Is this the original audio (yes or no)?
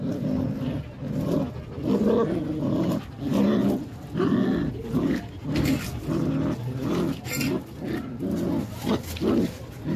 yes